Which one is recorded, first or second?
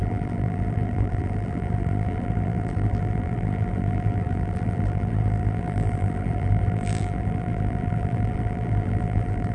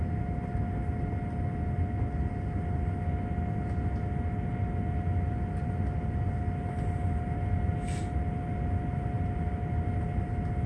second